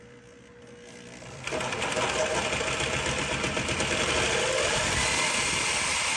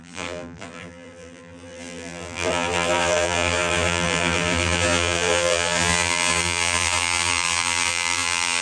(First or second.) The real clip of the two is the first